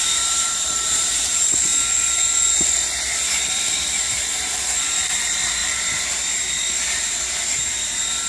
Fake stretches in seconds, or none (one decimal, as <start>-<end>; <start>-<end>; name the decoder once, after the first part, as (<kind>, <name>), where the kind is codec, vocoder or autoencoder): 0.0-1.7 (vocoder, BigVGAN v2); 3.6-8.3